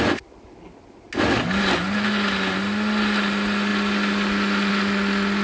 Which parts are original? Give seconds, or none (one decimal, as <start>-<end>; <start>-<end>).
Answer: 0.0-5.4